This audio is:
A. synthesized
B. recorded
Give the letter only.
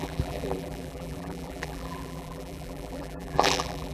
A